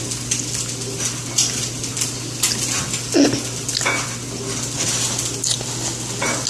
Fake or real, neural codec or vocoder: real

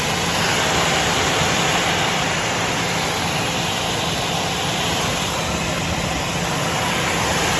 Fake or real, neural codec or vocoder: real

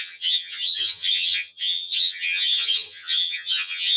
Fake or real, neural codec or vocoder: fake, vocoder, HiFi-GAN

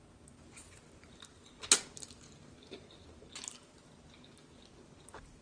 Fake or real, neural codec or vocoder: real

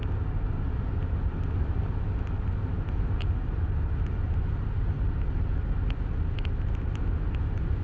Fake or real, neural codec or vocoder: real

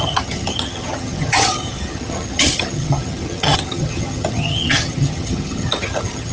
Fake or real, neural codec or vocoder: fake, vocoder, HiFi-GAN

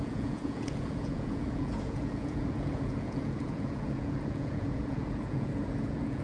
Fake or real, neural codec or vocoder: fake, vocoder, Vocos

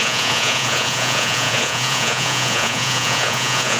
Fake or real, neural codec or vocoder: fake, vocoder, Vocos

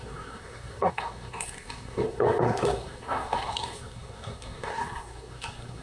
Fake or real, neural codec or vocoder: fake, codec, SNAC